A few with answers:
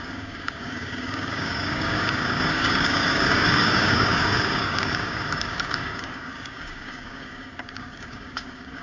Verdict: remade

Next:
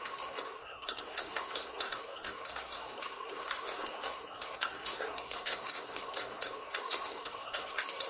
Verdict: remade